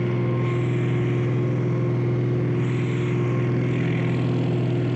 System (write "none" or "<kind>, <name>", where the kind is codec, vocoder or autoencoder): none